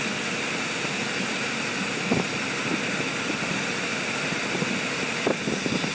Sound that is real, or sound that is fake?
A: real